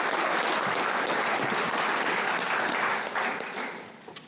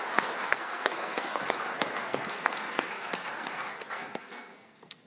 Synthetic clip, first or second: second